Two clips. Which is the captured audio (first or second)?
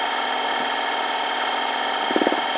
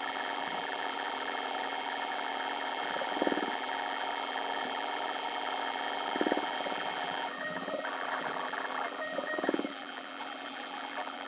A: first